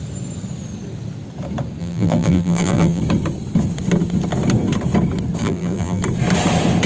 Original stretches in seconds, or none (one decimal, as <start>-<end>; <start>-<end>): 0.0-1.8; 3.0-5.4; 6.0-6.9